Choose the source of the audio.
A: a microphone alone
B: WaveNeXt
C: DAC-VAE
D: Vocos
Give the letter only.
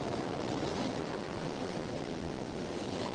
B